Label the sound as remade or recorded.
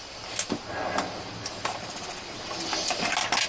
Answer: recorded